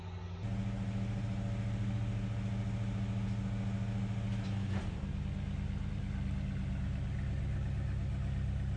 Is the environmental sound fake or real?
real